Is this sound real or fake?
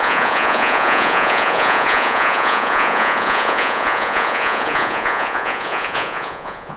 fake